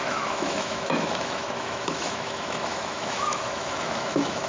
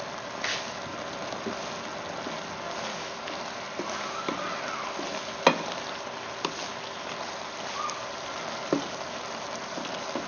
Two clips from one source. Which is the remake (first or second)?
first